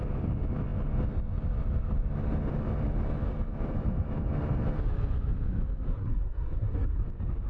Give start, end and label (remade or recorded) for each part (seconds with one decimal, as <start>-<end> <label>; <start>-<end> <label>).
0.0-5.9 recorded; 5.9-7.0 remade; 7.0-7.5 recorded